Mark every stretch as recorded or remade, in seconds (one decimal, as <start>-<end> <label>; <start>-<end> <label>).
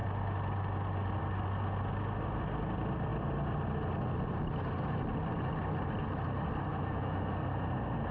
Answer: 0.0-6.7 recorded; 6.7-7.3 remade; 7.3-8.1 recorded